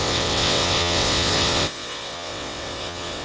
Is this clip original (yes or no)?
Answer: no